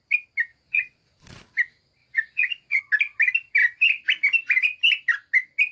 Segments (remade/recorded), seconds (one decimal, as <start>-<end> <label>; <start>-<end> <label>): 0.0-0.5 recorded; 0.5-1.4 remade; 1.4-2.0 recorded; 2.0-2.8 remade; 2.8-5.7 recorded